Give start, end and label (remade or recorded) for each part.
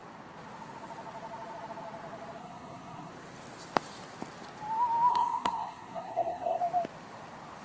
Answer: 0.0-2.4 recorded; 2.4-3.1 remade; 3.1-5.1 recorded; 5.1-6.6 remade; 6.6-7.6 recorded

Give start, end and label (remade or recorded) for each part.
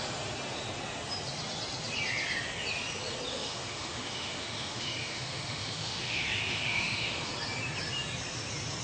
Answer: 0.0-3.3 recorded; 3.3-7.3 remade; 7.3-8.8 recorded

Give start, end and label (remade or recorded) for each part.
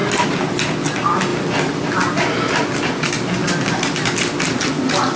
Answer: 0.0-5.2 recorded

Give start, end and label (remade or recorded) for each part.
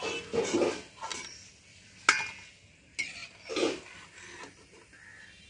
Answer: 0.0-5.5 recorded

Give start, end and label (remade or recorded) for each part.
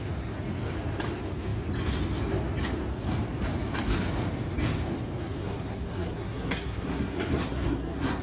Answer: 0.0-5.4 recorded; 5.4-8.2 remade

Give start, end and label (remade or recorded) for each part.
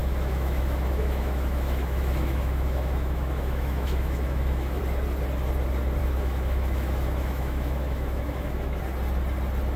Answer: 0.0-4.8 remade; 4.8-6.0 recorded; 6.0-8.8 remade; 8.8-9.8 recorded